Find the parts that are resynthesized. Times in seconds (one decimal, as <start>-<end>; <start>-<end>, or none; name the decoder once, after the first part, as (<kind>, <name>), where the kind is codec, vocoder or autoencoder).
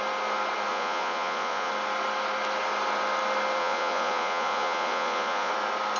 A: 0.7-1.7 (vocoder, Vocos); 3.6-5.5